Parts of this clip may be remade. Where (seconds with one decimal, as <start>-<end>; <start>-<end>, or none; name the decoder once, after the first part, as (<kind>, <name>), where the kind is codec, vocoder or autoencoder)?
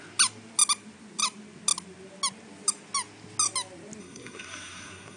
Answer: 4.0-5.2 (codec, SNAC)